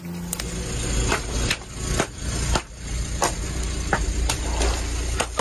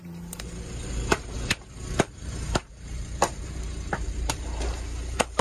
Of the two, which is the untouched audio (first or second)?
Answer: first